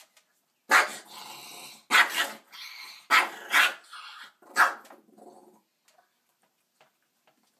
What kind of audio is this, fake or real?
real